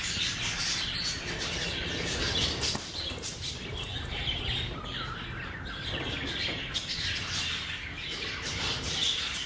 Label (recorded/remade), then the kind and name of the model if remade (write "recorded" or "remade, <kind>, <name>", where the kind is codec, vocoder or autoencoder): recorded